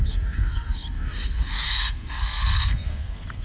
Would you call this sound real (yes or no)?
no